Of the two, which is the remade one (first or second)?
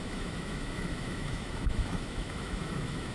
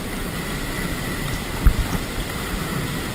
first